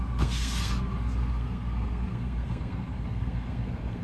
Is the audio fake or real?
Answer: fake